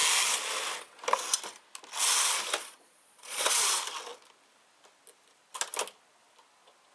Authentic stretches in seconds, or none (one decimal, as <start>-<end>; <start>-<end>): 0.0-2.6; 3.5-6.9